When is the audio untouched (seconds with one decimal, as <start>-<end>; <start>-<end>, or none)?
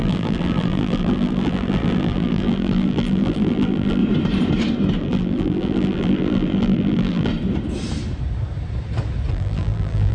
4.0-5.0; 7.3-9.3